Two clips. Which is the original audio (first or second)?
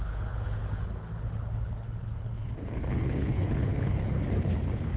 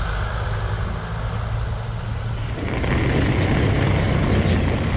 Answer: second